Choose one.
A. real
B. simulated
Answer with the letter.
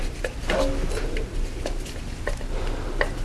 A